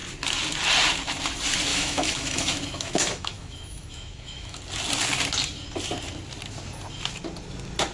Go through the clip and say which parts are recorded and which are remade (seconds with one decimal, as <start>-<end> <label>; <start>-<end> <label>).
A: 0.0-1.7 recorded; 1.7-4.6 remade; 4.6-7.9 recorded